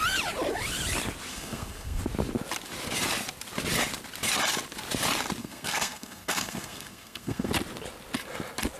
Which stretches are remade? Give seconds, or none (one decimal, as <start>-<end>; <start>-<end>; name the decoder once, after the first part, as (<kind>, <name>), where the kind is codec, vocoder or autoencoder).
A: 1.3-2.0 (codec, SNAC); 5.4-7.5